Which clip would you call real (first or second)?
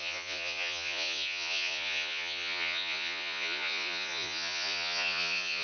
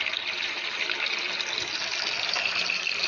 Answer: second